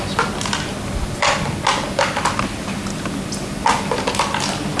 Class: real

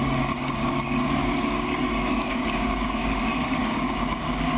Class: fake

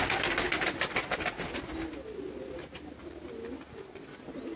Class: real